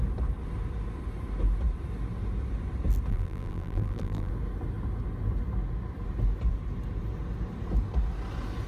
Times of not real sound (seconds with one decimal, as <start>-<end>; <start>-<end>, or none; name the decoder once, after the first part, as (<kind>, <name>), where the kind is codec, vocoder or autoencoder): 3.1-4.3 (vocoder, BigVGAN v2)